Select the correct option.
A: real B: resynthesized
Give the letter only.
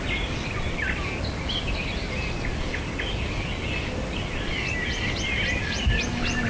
A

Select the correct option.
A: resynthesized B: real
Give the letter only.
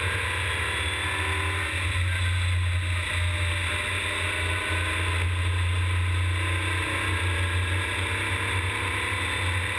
B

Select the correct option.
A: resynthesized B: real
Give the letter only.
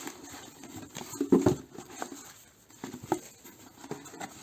B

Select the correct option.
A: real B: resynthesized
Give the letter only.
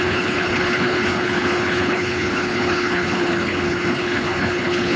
B